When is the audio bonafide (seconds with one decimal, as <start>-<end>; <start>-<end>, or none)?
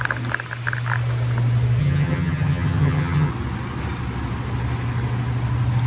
0.0-1.8; 3.3-5.9